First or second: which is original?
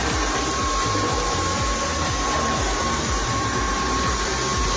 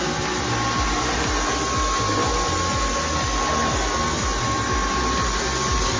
second